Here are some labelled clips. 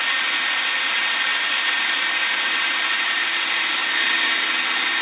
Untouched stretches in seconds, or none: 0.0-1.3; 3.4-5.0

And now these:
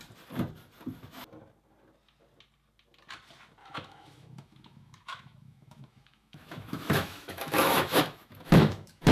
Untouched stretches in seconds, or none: 0.0-3.6